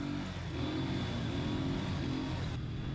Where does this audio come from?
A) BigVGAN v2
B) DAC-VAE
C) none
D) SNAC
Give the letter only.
C